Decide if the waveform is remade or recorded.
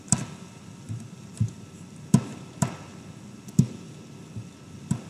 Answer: recorded